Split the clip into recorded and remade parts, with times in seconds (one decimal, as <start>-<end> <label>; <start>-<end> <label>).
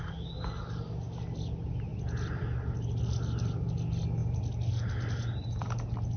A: 0.0-6.2 recorded